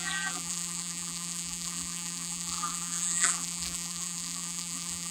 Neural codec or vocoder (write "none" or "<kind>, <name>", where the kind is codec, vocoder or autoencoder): vocoder, BigVGAN v2